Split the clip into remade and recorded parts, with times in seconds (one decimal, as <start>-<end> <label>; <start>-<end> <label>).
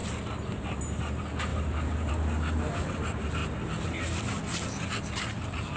0.0-1.5 remade; 1.5-2.1 recorded; 2.1-5.8 remade